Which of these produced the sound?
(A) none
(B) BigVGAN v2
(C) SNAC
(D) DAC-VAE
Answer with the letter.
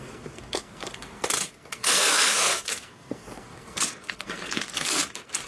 C